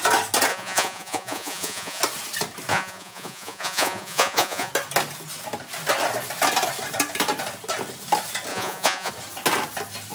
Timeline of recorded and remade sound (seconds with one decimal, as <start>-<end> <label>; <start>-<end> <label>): 0.0-0.5 recorded; 0.5-2.0 remade; 2.0-2.7 recorded; 2.7-4.7 remade; 4.7-8.5 recorded; 8.5-9.1 remade; 9.1-10.1 recorded